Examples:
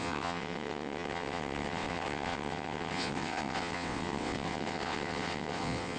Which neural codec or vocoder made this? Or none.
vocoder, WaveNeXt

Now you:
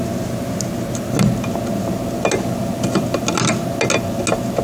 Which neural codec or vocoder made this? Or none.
none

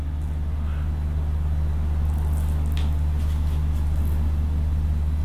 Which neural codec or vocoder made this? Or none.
none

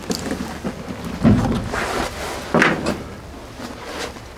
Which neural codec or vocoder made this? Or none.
none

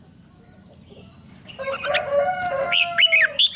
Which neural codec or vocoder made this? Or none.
none